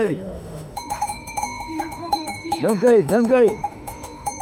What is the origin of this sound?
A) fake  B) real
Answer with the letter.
A